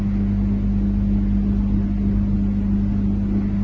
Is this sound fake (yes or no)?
no